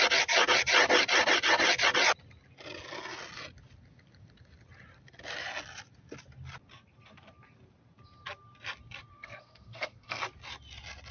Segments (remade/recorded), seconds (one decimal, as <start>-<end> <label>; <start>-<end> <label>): 0.0-9.1 recorded; 9.1-10.2 remade; 10.2-11.1 recorded